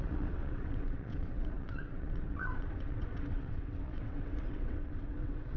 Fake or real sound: fake